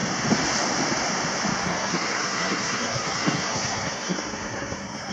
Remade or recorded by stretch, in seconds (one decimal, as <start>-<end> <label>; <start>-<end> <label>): 0.0-1.6 recorded; 1.6-5.1 remade